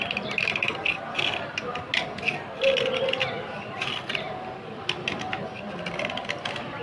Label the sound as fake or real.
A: real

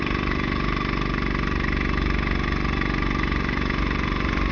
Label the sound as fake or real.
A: fake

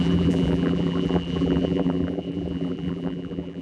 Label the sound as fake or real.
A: fake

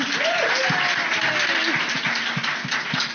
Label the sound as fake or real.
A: real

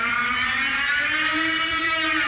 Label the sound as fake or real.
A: fake